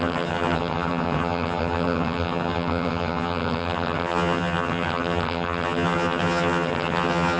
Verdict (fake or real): fake